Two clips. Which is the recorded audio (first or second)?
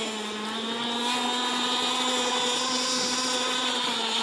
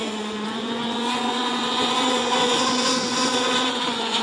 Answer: first